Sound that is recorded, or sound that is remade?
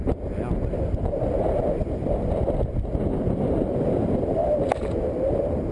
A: recorded